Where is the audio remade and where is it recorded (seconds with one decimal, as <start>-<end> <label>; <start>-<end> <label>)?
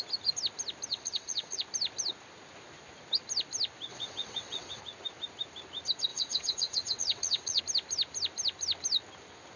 0.0-0.9 recorded; 0.9-1.6 remade; 1.6-3.9 recorded; 3.9-4.8 remade; 4.8-6.1 recorded; 6.1-7.6 remade; 7.6-9.6 recorded